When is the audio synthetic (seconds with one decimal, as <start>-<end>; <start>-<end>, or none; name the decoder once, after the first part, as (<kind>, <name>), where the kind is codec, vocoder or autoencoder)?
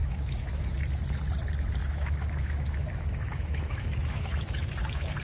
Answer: 0.0-0.6 (autoencoder, DAC-VAE); 1.8-5.2